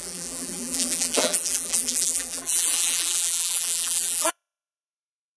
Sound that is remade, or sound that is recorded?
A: remade